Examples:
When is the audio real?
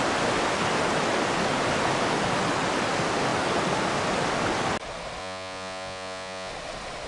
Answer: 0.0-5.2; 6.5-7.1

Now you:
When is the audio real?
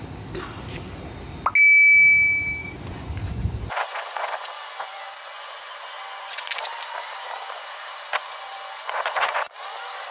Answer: 0.0-2.6; 6.7-8.2; 9.5-10.1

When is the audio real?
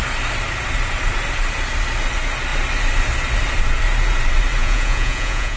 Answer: 0.0-4.6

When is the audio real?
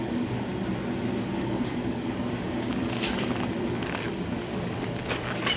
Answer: 0.5-1.2